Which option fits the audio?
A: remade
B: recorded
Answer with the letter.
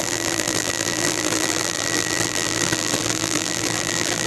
A